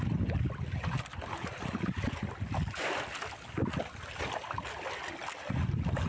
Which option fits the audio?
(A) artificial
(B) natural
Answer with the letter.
B